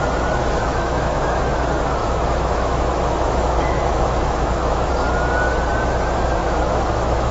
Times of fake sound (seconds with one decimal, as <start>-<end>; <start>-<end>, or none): 0.4-1.4; 2.0-4.9; 6.4-7.3